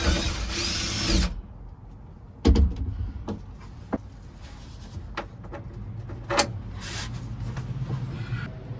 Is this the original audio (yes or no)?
yes